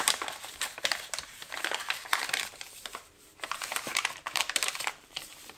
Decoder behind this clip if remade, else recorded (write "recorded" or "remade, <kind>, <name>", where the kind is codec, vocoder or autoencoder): remade, vocoder, BigVGAN v2